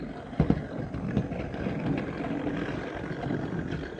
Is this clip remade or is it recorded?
recorded